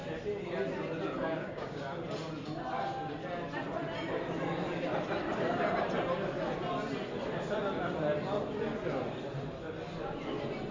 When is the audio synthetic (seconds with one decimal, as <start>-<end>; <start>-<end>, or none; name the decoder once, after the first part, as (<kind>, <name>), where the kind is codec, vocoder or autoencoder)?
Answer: 1.2-1.8 (codec, DAC)